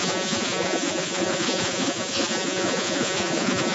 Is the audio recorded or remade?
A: remade